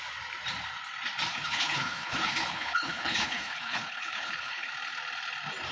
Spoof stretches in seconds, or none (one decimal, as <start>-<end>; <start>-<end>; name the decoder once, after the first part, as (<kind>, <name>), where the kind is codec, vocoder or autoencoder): 1.3-4.7 (codec, HILCodec)